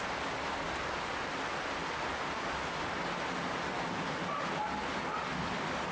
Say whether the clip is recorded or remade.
recorded